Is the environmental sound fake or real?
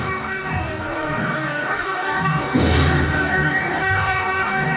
fake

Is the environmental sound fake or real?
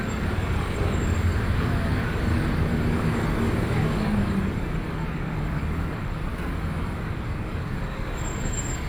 fake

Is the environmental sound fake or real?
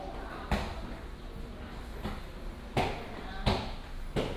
real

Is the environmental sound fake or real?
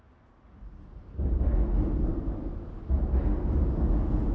real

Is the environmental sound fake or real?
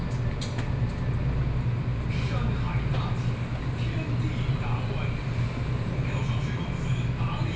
real